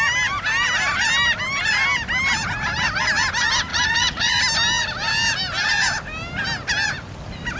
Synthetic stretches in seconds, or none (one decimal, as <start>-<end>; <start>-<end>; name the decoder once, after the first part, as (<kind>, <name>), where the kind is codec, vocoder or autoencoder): 3.7-4.4 (vocoder, Vocos)